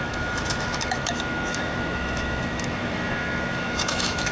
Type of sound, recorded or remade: remade